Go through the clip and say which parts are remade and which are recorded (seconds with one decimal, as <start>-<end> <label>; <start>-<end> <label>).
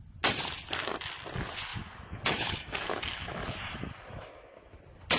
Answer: 0.0-1.7 recorded; 1.7-4.8 remade; 4.8-5.2 recorded